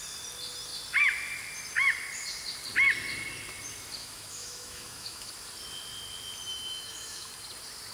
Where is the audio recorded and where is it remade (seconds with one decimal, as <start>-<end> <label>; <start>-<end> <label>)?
0.0-4.0 recorded; 4.0-5.3 remade; 5.3-6.5 recorded; 6.5-7.3 remade; 7.3-7.9 recorded